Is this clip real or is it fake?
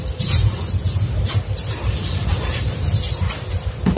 fake